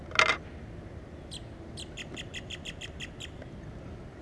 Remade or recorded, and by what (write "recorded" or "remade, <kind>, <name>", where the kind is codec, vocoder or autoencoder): recorded